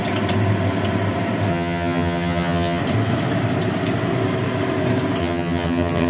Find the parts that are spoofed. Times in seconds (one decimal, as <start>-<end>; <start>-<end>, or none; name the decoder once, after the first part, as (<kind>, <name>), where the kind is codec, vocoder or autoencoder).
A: 1.5-2.8 (vocoder, HiFi-GAN); 5.2-6.1